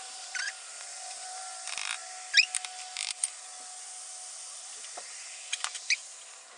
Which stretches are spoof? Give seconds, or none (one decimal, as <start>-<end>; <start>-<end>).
0.0-2.0; 6.0-6.6